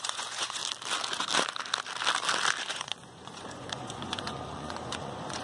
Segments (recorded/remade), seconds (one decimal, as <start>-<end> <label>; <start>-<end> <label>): 0.0-0.6 remade; 0.6-2.7 recorded; 2.7-5.4 remade